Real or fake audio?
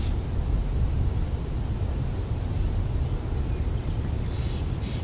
real